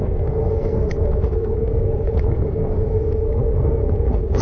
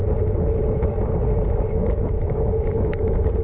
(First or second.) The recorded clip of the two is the second